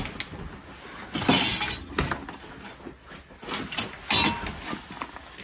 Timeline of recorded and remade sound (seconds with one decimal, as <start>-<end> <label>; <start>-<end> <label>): 0.0-5.4 recorded

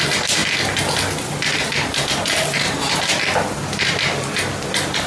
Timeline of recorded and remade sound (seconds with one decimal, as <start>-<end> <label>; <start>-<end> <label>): 0.0-5.1 recorded